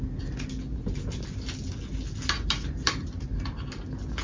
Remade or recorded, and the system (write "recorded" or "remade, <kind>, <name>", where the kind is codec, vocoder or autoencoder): recorded